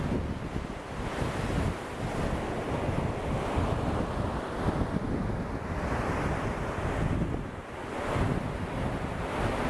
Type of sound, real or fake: real